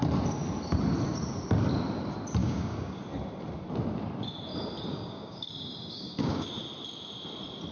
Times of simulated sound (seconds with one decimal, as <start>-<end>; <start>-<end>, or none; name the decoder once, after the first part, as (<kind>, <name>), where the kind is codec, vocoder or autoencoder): 2.4-3.0 (codec, DAC); 4.9-6.5